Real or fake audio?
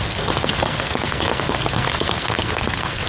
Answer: fake